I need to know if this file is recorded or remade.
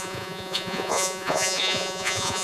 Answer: remade